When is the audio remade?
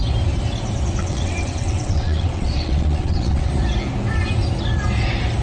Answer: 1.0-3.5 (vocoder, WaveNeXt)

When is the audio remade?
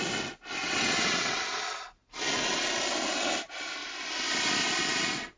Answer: 0.6-1.4 (vocoder, WaveNeXt)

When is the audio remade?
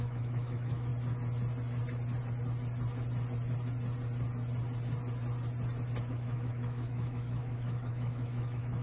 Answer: 0.0-0.9 (autoencoder, DAC-VAE); 6.0-8.8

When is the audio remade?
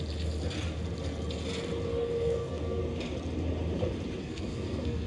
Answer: 1.9-2.8 (codec, SNAC); 4.2-5.1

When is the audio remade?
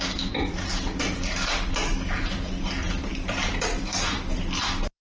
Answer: 0.0-5.0 (vocoder, BigVGAN v2)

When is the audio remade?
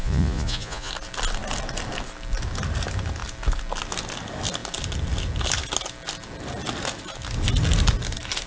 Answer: 0.0-0.9 (vocoder, Vocos)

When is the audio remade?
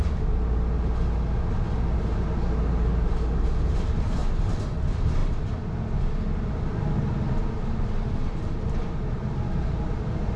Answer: none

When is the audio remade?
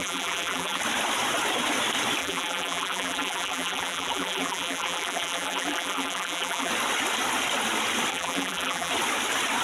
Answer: 0.0-0.8 (vocoder, BigVGAN v2); 2.2-6.7; 8.1-8.9